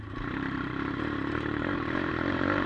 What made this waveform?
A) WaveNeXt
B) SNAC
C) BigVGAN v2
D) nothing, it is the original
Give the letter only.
C